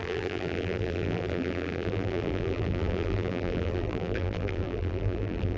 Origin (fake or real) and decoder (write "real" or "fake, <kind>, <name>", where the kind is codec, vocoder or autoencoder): fake, vocoder, BigVGAN v2